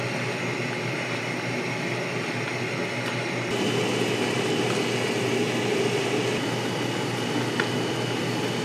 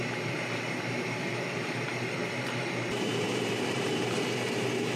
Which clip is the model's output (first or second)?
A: second